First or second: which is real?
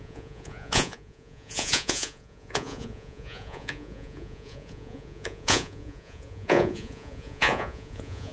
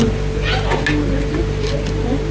second